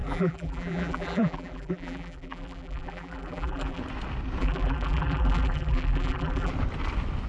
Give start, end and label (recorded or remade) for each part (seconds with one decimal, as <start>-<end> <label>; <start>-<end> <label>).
0.0-3.8 remade; 3.8-4.4 recorded; 4.4-6.5 remade; 6.5-7.3 recorded